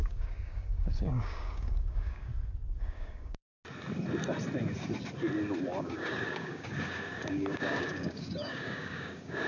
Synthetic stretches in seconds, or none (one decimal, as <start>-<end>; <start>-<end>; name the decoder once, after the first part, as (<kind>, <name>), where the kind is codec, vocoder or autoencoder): 0.0-2.3 (codec, DAC); 2.8-3.6; 5.8-9.5